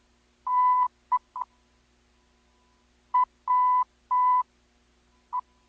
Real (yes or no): yes